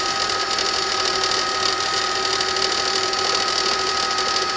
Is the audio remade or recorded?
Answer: recorded